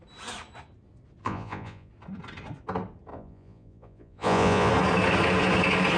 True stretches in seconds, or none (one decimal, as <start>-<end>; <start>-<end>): 0.0-1.2; 1.9-3.1; 4.7-6.0